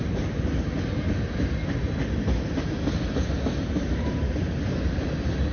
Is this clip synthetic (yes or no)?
no